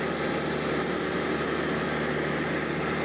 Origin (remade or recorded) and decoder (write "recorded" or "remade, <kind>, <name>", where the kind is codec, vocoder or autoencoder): recorded